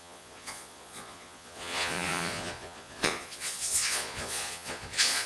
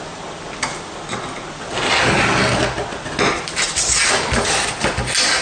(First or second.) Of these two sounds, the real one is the second